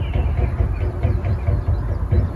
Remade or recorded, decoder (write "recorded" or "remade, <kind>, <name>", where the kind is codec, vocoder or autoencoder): recorded